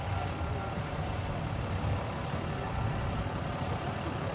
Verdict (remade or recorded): recorded